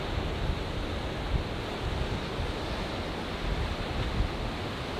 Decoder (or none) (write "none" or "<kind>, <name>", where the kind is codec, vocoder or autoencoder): none